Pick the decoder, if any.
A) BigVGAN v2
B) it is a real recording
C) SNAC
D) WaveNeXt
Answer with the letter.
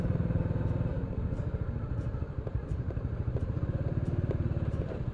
A